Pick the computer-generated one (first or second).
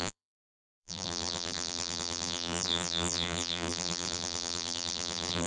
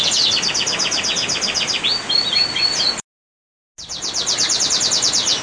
first